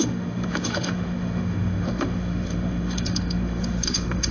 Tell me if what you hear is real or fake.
fake